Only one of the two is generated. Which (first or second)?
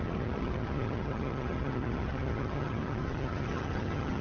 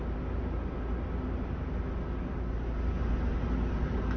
first